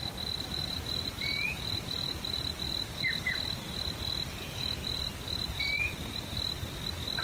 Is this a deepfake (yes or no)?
no